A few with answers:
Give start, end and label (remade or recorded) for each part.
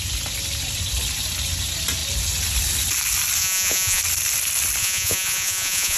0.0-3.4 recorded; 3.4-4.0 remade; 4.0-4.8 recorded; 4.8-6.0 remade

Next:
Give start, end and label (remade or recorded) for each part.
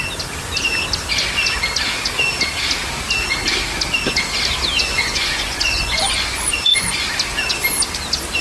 0.0-4.8 recorded; 4.8-7.0 remade; 7.0-8.4 recorded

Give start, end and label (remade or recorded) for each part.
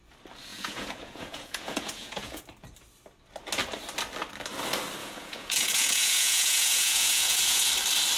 0.0-0.5 recorded; 0.5-2.4 remade; 2.4-5.0 recorded; 5.0-7.7 remade; 7.7-8.2 recorded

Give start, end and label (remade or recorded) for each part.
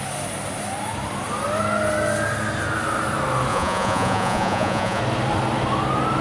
0.0-3.5 recorded; 3.5-5.0 remade; 5.0-6.2 recorded